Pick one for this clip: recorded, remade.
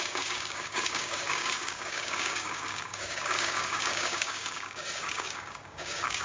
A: remade